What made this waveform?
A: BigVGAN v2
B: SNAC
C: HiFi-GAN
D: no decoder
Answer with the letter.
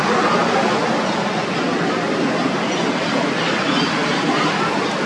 D